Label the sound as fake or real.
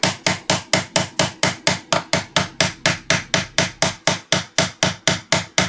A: real